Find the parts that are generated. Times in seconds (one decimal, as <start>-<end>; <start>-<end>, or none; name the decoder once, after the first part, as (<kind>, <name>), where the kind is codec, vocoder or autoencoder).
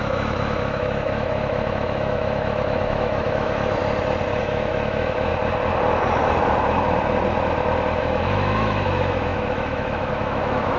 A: 0.0-3.8 (autoencoder, DAC-VAE); 4.4-5.3; 8.0-10.8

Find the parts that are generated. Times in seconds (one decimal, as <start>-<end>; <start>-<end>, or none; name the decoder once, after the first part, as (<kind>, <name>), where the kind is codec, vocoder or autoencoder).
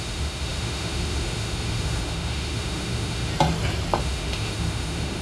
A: 0.0-3.3 (autoencoder, DAC-VAE); 4.0-5.2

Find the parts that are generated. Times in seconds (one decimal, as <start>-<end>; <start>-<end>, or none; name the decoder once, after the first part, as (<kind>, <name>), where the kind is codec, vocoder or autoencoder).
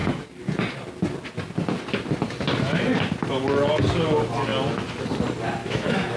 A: 5.6-6.2 (autoencoder, DAC-VAE)